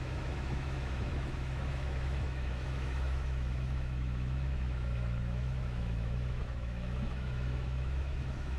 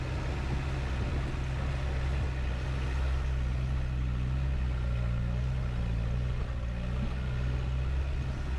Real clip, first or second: second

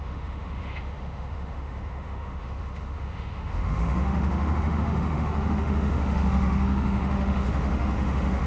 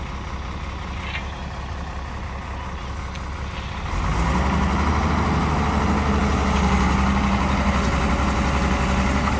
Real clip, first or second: second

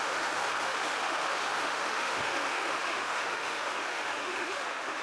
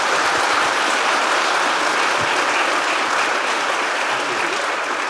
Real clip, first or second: second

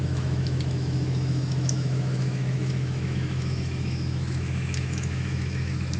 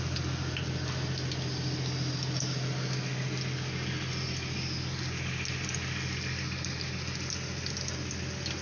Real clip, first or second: second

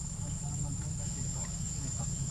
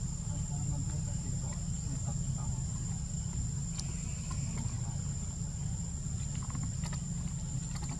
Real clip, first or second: second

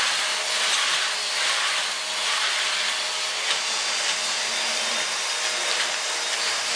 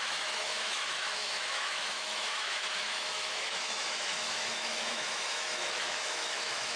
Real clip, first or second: first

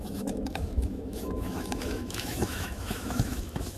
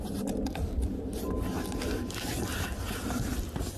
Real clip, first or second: second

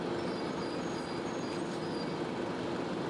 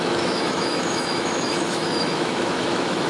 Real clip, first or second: first